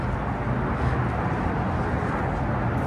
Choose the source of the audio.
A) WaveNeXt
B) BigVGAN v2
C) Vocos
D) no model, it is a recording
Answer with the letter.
D